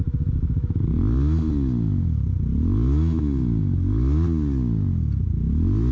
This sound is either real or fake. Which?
real